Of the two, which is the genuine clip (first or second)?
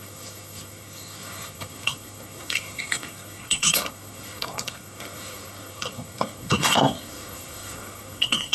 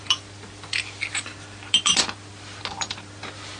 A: second